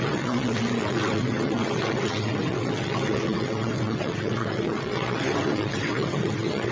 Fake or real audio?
fake